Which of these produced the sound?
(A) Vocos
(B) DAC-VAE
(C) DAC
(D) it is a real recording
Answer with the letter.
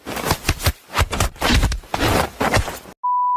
D